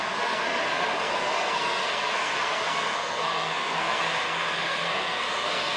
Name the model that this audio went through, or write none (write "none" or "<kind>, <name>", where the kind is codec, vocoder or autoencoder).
codec, SNAC